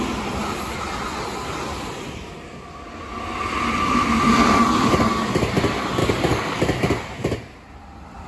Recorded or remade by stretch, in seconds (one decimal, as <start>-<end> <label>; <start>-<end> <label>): 0.0-6.0 recorded; 6.0-6.6 remade; 6.6-8.3 recorded